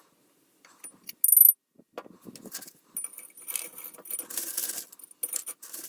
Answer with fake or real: real